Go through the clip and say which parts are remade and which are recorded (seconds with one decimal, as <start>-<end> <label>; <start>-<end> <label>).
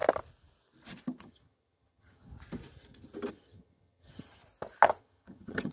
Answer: 0.0-1.2 recorded; 1.2-2.3 remade; 2.3-3.3 recorded; 3.3-4.4 remade; 4.4-5.0 recorded; 5.0-5.7 remade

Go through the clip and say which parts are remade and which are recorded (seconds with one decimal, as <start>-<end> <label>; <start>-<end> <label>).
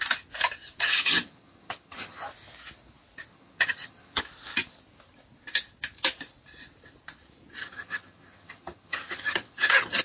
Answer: 0.0-0.8 recorded; 0.8-2.3 remade; 2.3-3.3 recorded; 3.3-4.2 remade; 4.2-7.6 recorded; 7.6-10.0 remade